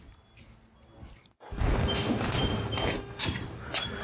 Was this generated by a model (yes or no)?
no